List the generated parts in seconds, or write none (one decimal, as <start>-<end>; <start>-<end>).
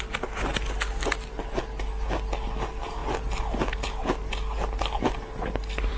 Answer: none